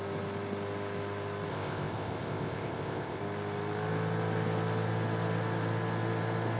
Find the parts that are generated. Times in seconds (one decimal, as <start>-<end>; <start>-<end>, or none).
1.5-3.2